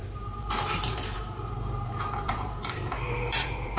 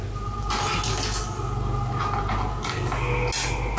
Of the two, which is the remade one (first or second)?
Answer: first